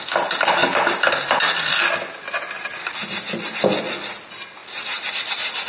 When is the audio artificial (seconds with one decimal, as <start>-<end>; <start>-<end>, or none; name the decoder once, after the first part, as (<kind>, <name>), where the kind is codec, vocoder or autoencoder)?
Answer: 4.6-5.1 (vocoder, BigVGAN v2)